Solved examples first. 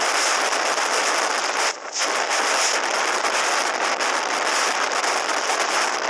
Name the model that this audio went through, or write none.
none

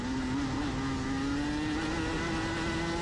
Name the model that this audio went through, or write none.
none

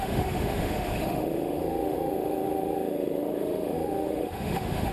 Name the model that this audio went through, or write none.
autoencoder, DAC-VAE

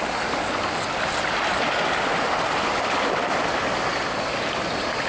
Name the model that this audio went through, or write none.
none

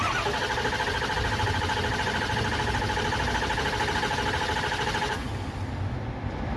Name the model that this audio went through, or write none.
none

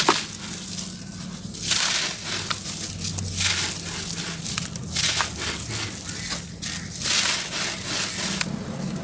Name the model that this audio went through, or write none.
none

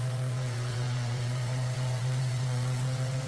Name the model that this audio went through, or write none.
vocoder, WaveNeXt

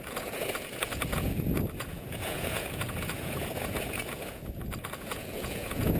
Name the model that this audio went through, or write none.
vocoder, Vocos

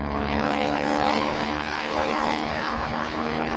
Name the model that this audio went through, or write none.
codec, HILCodec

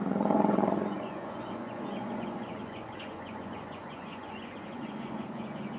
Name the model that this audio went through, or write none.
vocoder, Vocos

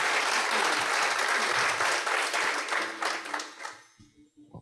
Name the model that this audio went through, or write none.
none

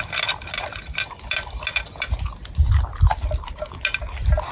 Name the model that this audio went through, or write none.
none